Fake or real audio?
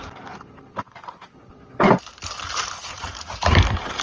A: fake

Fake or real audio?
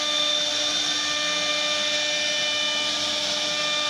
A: real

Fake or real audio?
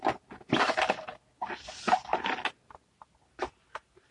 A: real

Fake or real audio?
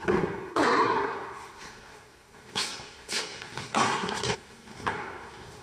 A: fake